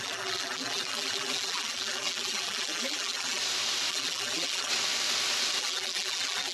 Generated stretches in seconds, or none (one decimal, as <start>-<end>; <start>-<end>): 0.0-3.4; 3.9-4.7; 5.6-6.5